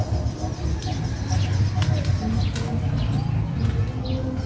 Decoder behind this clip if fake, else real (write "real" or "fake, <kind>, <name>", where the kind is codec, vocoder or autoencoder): real